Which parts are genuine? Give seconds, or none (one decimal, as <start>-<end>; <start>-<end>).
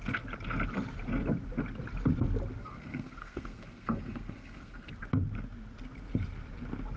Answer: 0.0-2.6; 4.9-7.0